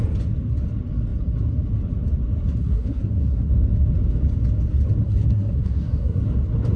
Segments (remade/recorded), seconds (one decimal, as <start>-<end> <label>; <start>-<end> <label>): 0.0-2.6 recorded; 2.6-3.5 remade; 3.5-5.0 recorded; 5.0-6.2 remade; 6.2-6.8 recorded